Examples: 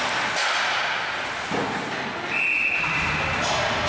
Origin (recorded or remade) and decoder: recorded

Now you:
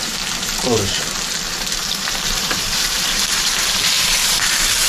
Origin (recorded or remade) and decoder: remade, vocoder, BigVGAN v2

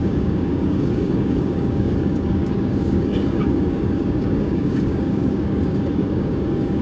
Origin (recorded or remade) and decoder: remade, codec, DAC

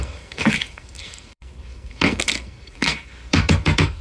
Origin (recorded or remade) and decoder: remade, codec, SNAC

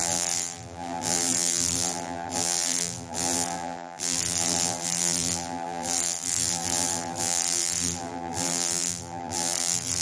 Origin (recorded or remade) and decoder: remade, vocoder, BigVGAN v2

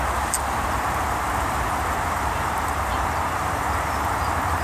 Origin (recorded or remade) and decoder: remade, vocoder, BigVGAN v2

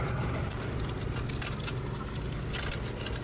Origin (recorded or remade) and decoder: recorded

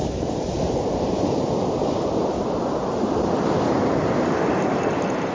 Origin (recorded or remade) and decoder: remade, vocoder, BigVGAN v2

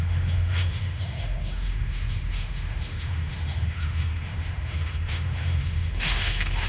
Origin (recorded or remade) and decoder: remade, autoencoder, DAC-VAE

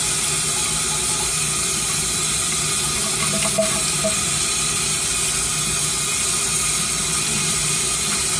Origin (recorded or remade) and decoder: recorded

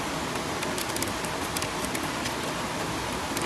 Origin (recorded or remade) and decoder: recorded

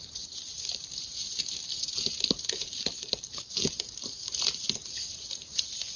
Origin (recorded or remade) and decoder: recorded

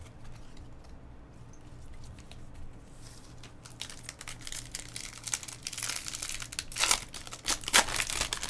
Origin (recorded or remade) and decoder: recorded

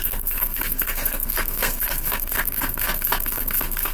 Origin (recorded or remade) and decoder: remade, codec, SNAC